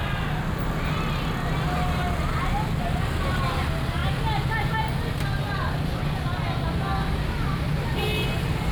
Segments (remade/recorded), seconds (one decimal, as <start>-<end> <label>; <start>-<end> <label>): 0.0-8.7 recorded